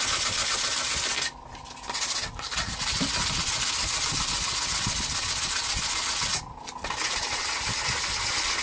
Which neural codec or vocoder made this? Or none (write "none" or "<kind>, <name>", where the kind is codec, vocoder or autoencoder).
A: none